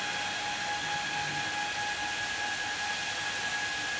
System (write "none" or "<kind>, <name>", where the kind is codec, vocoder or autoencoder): none